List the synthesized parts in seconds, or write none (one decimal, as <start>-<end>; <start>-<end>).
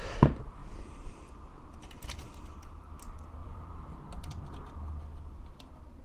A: 3.4-4.3